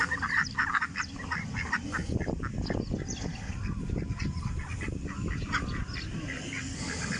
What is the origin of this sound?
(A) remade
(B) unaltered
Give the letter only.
B